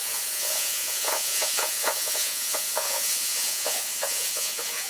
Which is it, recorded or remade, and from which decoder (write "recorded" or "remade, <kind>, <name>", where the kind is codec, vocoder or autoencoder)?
remade, vocoder, Vocos